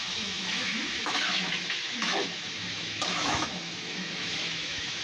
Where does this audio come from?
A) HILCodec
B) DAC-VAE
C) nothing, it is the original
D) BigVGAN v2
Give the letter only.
B